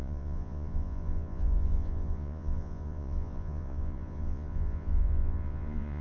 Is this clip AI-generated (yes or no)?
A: yes